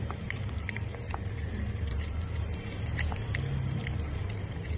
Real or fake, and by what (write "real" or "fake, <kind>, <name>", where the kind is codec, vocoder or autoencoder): fake, vocoder, BigVGAN v2